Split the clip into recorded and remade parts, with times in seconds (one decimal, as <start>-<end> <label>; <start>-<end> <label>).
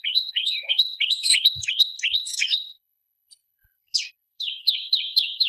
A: 0.0-5.5 remade